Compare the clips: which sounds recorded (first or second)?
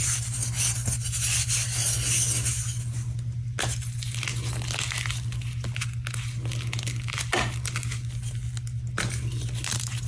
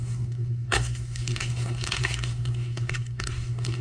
first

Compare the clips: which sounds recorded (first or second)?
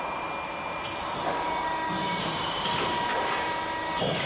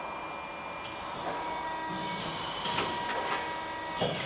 second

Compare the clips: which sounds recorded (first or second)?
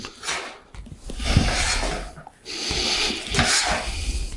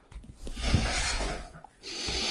first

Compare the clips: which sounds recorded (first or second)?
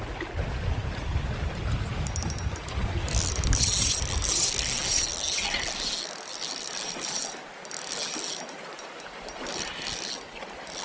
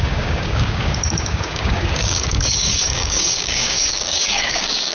first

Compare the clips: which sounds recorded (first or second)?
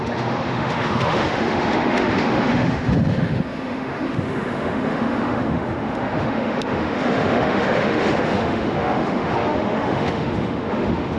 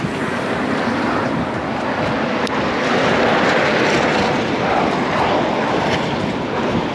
second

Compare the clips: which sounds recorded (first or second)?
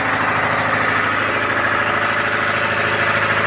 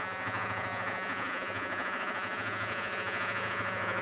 first